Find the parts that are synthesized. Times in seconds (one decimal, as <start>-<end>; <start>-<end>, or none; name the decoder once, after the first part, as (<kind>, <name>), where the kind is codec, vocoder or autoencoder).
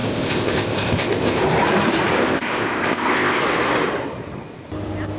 0.0-1.4 (codec, ZipCodec); 2.2-3.4